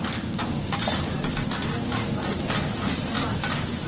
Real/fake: real